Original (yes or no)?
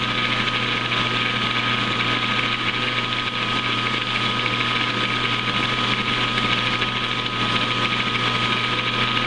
yes